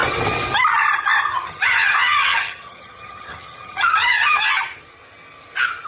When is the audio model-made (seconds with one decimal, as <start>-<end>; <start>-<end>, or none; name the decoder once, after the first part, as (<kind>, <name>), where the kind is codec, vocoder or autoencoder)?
1.3-4.4 (vocoder, HiFi-GAN)